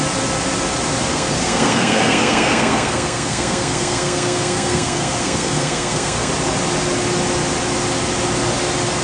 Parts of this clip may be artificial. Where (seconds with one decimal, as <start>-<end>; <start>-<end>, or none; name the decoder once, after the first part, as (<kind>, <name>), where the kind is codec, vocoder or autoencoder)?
1.1-6.3 (codec, SNAC)